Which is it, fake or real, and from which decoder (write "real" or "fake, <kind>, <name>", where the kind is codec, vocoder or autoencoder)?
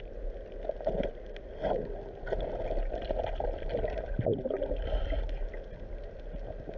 real